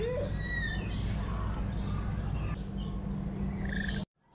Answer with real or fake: real